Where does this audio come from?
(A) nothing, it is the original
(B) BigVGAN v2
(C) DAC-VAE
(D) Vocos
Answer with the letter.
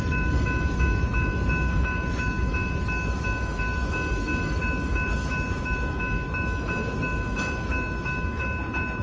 C